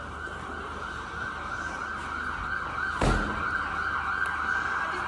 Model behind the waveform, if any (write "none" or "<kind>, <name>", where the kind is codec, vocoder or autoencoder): none